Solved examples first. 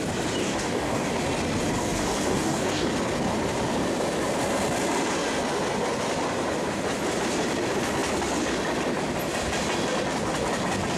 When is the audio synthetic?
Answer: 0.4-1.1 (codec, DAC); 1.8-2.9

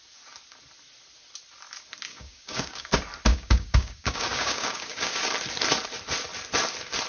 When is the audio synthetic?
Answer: 2.1-2.9 (codec, DAC); 3.3-5.2

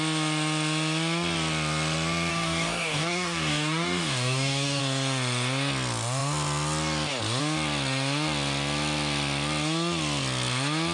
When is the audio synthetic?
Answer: 2.3-4.8 (codec, DAC)

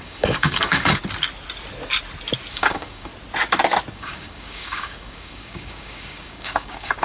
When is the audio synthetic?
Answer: 0.0-1.0 (codec, DAC); 2.5-3.1; 3.9-7.0

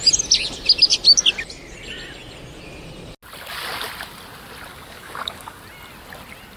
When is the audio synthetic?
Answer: 4.7-5.6 (codec, DAC)

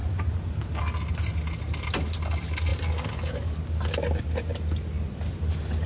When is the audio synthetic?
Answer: none

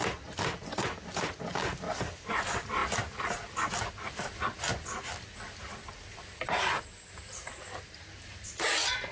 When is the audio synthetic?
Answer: none